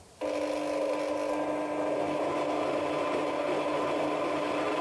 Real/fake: real